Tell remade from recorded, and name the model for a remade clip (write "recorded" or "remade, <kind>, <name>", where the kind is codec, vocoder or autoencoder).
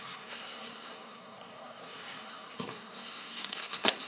remade, codec, SNAC